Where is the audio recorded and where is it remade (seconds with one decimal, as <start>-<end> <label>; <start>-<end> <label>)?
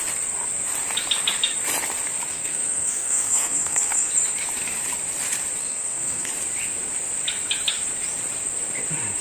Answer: 0.0-2.3 recorded; 2.3-4.1 remade; 4.1-5.6 recorded; 5.6-6.3 remade; 6.3-9.2 recorded